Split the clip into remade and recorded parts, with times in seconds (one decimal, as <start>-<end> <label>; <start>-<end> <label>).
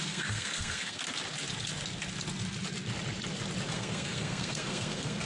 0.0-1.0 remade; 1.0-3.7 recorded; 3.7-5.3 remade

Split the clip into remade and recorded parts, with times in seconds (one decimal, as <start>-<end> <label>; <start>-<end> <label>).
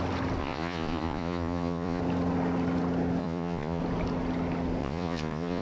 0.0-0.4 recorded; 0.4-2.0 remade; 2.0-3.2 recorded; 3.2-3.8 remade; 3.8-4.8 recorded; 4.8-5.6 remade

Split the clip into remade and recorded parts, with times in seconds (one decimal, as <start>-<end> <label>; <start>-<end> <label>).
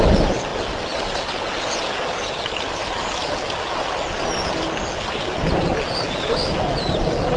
0.0-7.4 recorded